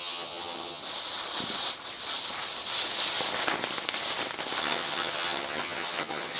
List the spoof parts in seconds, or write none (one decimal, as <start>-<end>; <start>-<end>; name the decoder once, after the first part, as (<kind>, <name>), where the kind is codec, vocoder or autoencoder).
0.0-0.8 (vocoder, HiFi-GAN); 4.6-6.4